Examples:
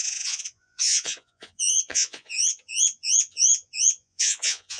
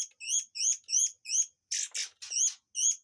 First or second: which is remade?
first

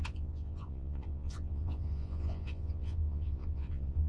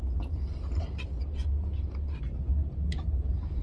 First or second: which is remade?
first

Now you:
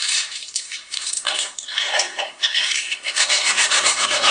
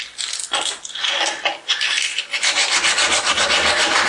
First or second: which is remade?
first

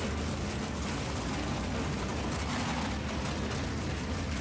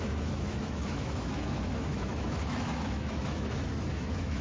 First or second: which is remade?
second